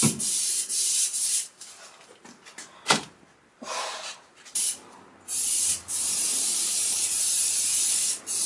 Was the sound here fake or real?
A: fake